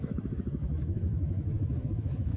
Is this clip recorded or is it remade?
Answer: remade